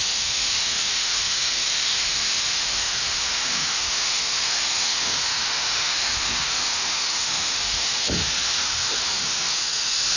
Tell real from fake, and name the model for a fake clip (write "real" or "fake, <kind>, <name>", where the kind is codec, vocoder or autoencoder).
fake, autoencoder, DAC-VAE